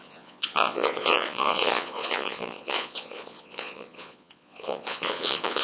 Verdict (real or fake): fake